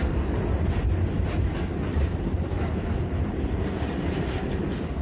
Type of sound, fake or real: real